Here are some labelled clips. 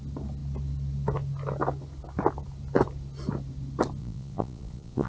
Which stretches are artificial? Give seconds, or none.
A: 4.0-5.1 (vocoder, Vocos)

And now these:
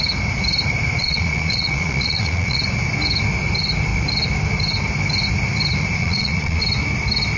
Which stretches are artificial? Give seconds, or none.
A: 1.0-2.6 (vocoder, Vocos); 6.0-6.6

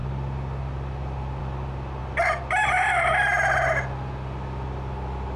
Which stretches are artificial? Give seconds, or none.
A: none

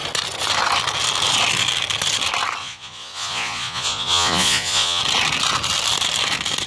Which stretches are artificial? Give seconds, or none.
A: 2.6-5.0 (vocoder, Vocos)

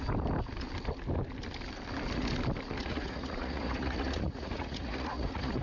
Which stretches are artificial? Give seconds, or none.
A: 2.8-5.6 (vocoder, Vocos)

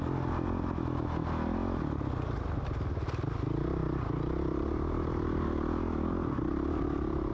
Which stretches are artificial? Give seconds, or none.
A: none

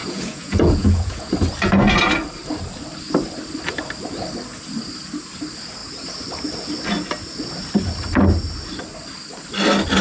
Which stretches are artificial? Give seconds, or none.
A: 0.0-1.3 (vocoder, Vocos)

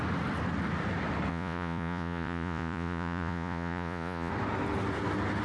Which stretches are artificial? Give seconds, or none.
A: 1.3-4.3 (vocoder, Vocos)